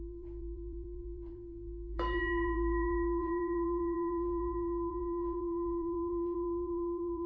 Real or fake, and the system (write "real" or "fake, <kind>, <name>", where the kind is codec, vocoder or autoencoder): fake, vocoder, BigVGAN v2